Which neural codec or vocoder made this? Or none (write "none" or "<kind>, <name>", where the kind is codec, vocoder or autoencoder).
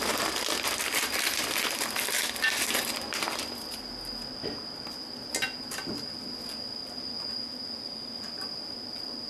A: none